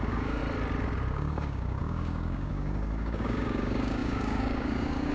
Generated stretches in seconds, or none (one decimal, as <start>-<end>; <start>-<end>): 0.0-0.4; 1.1-5.1